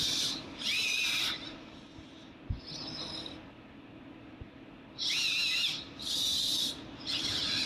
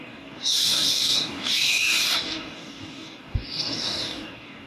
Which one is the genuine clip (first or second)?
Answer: first